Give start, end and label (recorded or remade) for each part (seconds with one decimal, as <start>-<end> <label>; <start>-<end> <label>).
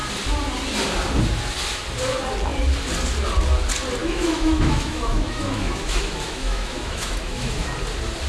0.0-4.0 recorded; 4.0-7.7 remade; 7.7-8.3 recorded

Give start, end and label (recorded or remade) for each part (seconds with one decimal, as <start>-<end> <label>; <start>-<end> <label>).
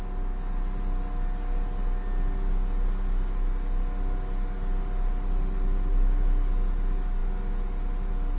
0.0-8.4 recorded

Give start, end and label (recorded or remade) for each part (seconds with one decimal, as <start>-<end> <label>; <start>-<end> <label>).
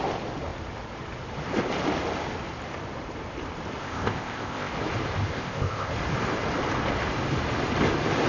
0.0-3.8 recorded; 3.8-4.7 remade; 4.7-5.3 recorded; 5.3-5.9 remade; 5.9-8.3 recorded